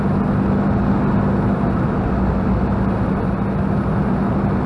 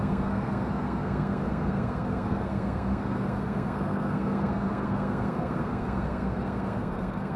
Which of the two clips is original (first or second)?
first